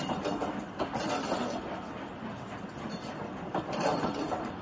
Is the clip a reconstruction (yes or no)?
no